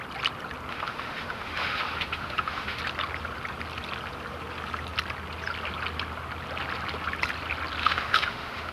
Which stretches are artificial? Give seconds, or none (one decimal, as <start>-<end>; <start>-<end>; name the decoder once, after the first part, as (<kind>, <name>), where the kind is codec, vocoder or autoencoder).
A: 0.7-2.8 (autoencoder, DAC-VAE); 7.8-8.7